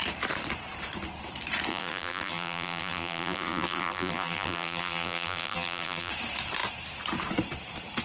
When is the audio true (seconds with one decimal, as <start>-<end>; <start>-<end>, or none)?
0.0-1.7; 6.1-8.0